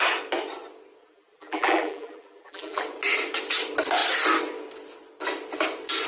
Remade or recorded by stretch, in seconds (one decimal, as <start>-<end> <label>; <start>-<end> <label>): 0.0-1.0 recorded; 1.0-2.8 remade; 2.8-6.1 recorded